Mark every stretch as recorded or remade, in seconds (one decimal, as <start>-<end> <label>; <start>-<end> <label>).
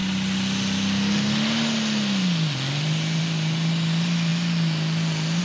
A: 0.0-5.4 recorded